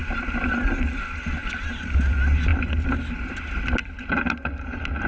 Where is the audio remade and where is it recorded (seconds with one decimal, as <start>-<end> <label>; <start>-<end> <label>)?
0.0-5.1 recorded

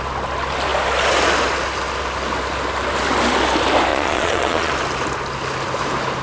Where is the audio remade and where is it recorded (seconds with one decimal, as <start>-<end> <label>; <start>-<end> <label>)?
0.0-3.9 recorded; 3.9-4.7 remade; 4.7-6.2 recorded

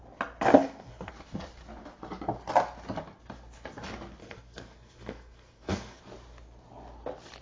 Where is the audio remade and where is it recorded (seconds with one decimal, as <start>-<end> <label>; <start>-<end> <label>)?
0.0-0.5 recorded; 0.5-1.1 remade; 1.1-4.2 recorded; 4.2-6.0 remade; 6.0-7.4 recorded

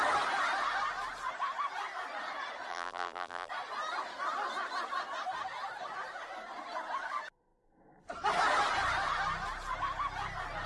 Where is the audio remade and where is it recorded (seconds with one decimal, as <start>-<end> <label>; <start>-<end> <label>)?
0.0-2.7 recorded; 2.7-3.5 remade; 3.5-10.7 recorded

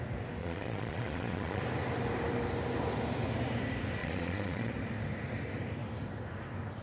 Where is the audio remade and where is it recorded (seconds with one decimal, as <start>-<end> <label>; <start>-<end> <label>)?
0.0-0.4 recorded; 0.4-1.6 remade; 1.6-4.0 recorded; 4.0-4.7 remade; 4.7-6.8 recorded

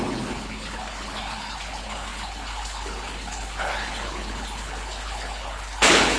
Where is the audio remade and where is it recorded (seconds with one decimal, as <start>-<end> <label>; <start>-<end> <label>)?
0.0-6.2 remade